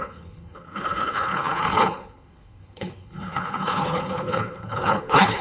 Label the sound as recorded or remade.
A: remade